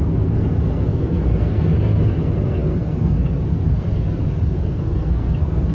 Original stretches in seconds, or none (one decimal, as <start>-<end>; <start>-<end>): none